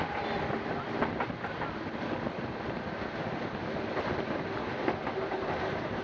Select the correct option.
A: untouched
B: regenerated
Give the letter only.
A